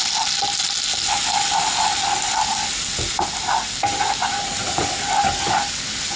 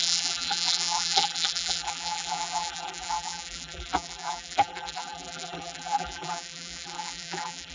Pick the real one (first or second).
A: first